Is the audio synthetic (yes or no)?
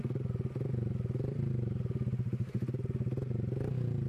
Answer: no